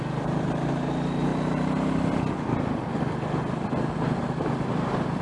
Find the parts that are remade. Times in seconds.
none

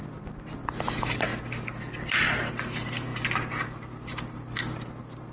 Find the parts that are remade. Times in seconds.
none

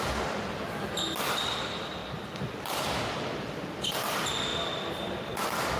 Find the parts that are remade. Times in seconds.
4.5-5.3 (vocoder, BigVGAN v2)

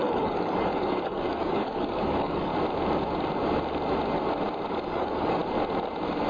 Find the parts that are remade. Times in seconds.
0.0-2.5 (codec, DAC); 4.7-5.4

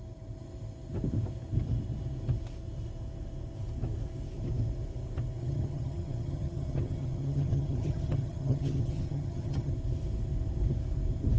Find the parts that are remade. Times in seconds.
5.4-9.7 (vocoder, HiFi-GAN)

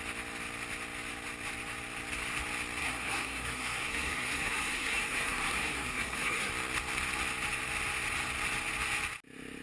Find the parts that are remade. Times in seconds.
2.8-6.5 (codec, SNAC)

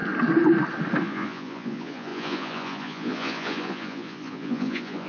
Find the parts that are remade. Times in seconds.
1.0-5.1 (vocoder, Vocos)